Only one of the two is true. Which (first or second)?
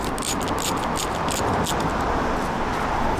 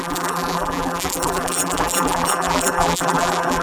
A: first